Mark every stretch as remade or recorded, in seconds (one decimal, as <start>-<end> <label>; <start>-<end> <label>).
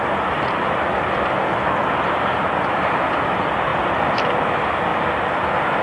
0.0-3.7 remade; 3.7-4.4 recorded; 4.4-5.8 remade